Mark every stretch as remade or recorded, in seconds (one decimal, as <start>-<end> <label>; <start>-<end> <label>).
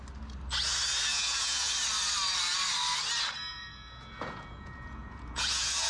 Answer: 0.0-1.1 recorded; 1.1-1.7 remade; 1.7-3.5 recorded; 3.5-5.9 remade